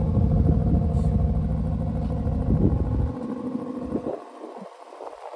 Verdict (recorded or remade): recorded